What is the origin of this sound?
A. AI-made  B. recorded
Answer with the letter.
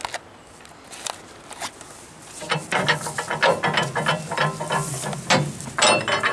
B